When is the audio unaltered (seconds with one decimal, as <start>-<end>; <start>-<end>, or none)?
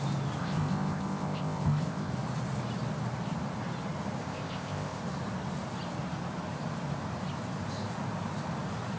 0.0-0.4; 2.1-4.2; 5.0-9.0